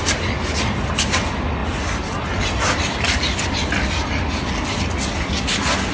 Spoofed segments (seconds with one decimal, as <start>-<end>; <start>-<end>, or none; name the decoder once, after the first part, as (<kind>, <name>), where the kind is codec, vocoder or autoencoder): none